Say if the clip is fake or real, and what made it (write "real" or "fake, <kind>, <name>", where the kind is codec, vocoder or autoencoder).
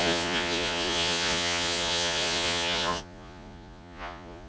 fake, vocoder, Vocos